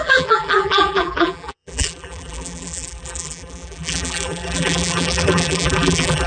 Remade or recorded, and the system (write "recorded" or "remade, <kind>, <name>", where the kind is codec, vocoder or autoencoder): remade, vocoder, BigVGAN v2